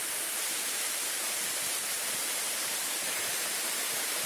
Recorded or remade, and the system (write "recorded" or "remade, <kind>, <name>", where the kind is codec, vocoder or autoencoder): remade, vocoder, BigVGAN v2